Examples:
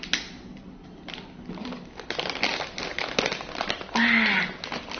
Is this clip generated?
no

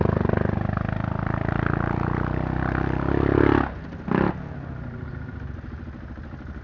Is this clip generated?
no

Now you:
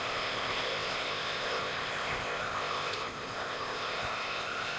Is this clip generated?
yes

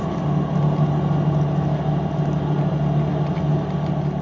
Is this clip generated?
no